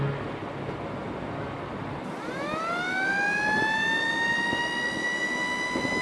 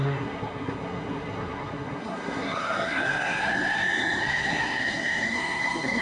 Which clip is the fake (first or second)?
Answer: second